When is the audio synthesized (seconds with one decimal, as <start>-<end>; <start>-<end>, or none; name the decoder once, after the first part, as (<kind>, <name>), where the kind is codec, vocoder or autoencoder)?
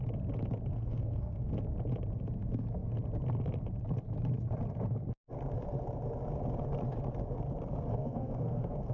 0.7-1.5 (codec, SNAC); 7.9-8.9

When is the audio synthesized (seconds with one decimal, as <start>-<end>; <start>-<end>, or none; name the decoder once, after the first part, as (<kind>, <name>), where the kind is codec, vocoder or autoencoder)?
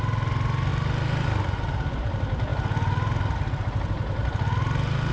none